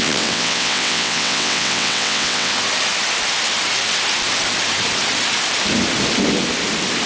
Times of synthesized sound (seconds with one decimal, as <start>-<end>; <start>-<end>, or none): 0.0-2.5